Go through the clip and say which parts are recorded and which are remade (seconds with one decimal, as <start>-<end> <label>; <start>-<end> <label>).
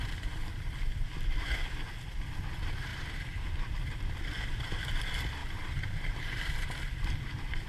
0.0-2.9 recorded; 2.9-3.5 remade; 3.5-5.4 recorded; 5.4-6.4 remade; 6.4-7.7 recorded